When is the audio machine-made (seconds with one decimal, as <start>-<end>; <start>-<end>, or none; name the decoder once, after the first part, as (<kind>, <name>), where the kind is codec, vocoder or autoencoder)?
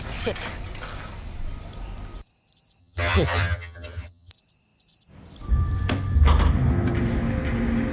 2.8-4.3 (vocoder, HiFi-GAN)